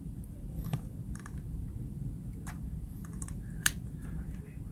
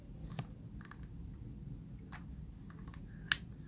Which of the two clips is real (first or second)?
second